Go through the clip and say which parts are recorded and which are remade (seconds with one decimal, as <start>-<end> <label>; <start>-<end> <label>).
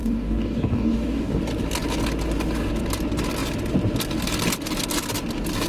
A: 0.0-1.4 remade; 1.4-5.7 recorded